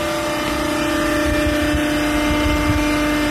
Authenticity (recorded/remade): recorded